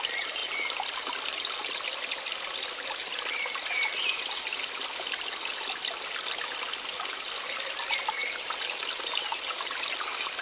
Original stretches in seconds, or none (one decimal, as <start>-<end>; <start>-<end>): 0.0-10.4